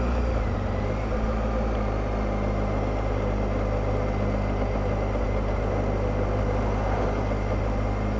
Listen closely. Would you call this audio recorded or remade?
recorded